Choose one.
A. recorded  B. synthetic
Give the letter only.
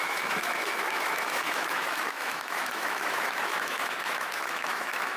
B